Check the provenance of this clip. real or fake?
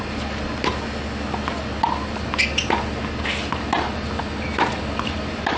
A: real